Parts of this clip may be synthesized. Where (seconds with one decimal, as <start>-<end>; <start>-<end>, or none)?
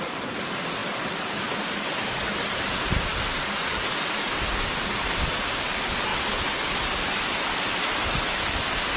none